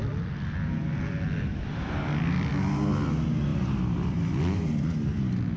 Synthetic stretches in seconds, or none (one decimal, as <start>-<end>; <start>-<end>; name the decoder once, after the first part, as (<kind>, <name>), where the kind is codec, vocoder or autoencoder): 1.5-2.5 (vocoder, BigVGAN v2); 3.5-5.6